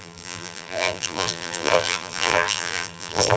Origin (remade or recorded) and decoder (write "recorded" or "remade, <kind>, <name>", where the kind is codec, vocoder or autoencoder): remade, vocoder, BigVGAN v2